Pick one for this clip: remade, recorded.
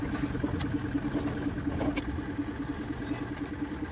recorded